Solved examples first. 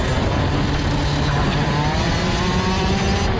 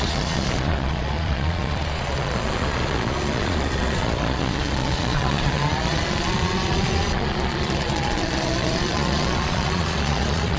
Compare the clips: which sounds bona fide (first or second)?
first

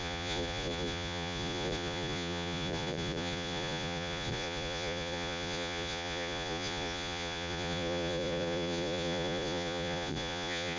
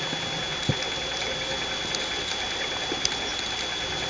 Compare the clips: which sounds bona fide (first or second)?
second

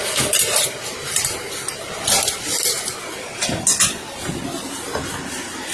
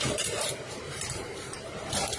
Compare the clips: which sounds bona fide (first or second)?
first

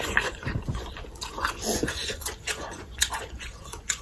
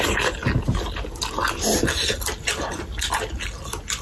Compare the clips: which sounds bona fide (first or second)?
second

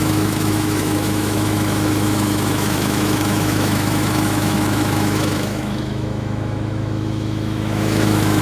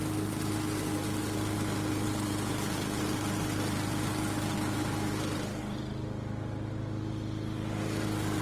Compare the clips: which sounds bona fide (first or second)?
second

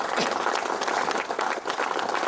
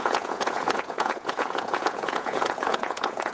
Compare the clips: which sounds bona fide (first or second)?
first